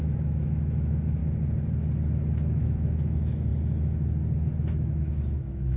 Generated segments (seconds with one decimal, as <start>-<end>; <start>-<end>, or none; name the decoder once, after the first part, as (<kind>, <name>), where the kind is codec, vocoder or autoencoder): 0.0-1.2 (autoencoder, DAC-VAE); 2.6-3.5; 4.5-5.8